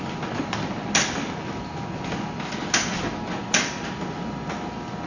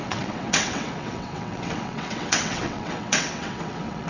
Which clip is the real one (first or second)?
first